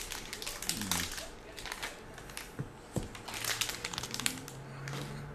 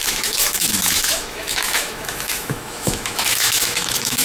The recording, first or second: first